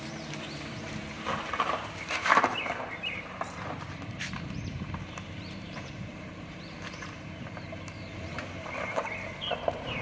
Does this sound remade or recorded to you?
remade